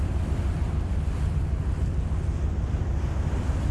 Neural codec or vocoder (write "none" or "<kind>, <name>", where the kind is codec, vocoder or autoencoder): none